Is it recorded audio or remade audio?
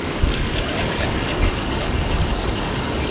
remade